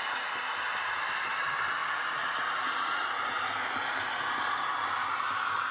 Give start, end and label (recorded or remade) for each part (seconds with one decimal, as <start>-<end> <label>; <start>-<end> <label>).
0.0-5.7 recorded